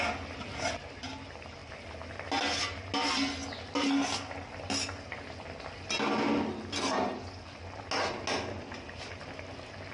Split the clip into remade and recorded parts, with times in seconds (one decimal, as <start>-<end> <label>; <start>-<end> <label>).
0.0-9.9 recorded